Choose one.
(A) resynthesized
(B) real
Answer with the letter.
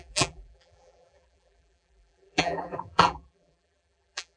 A